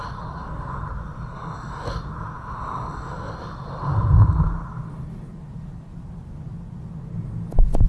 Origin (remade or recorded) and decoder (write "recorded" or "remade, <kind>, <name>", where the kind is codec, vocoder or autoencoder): recorded